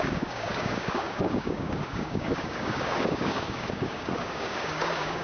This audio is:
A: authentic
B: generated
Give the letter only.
B